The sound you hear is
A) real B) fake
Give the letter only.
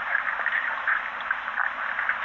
A